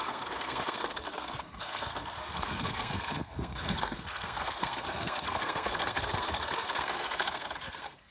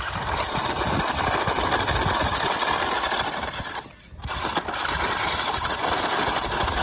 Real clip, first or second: second